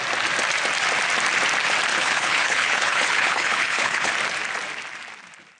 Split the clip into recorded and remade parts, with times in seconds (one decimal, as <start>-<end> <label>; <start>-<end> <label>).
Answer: 0.0-1.9 recorded; 1.9-4.1 remade; 4.1-5.6 recorded